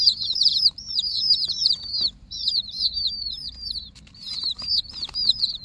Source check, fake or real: fake